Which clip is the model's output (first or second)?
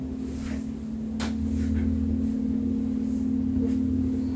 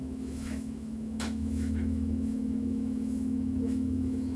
second